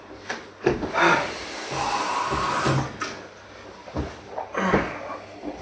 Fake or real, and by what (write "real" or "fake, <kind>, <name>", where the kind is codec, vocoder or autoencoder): real